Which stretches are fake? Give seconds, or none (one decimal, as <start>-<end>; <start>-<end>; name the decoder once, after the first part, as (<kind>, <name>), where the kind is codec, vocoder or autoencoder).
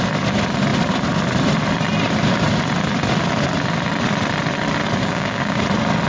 5.0-5.6 (codec, DAC)